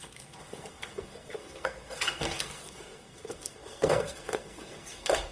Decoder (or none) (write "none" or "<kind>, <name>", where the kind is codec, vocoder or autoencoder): codec, SNAC